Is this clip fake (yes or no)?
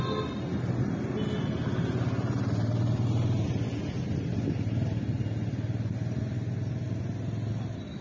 no